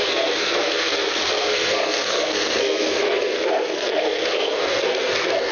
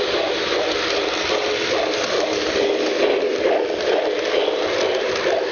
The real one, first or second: second